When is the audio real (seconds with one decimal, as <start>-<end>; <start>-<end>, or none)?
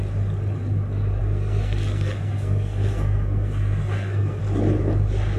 0.0-1.2; 4.4-5.4